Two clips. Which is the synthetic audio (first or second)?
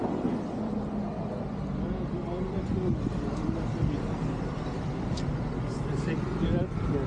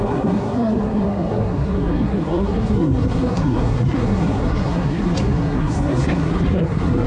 second